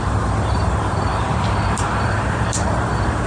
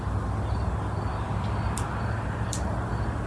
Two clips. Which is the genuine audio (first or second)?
second